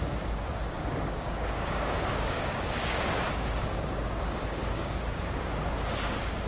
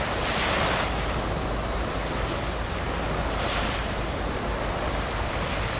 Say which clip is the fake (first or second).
first